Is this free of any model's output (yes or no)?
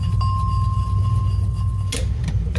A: yes